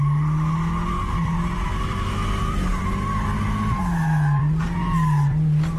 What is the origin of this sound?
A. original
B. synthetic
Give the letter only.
A